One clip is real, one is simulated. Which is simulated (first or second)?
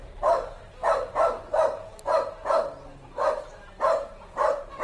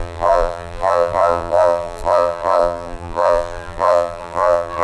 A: second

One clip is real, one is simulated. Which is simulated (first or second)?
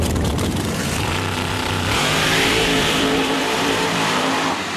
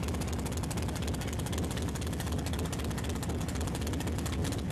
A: first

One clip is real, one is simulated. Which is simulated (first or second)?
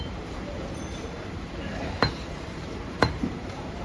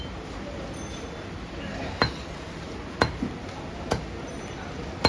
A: first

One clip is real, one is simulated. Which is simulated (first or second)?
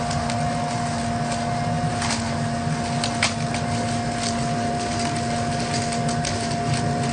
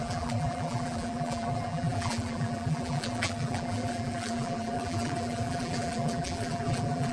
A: second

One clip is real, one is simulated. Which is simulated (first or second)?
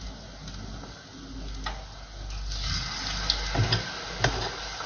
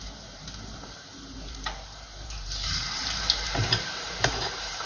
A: second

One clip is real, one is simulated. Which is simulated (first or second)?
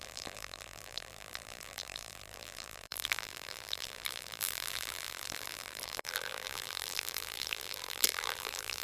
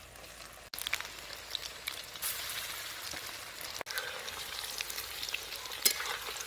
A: first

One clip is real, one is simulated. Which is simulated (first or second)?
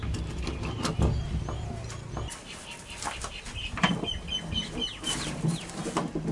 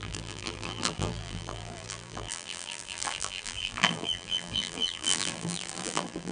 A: second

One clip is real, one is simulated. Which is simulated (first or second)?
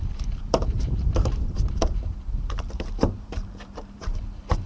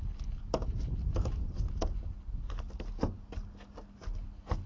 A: first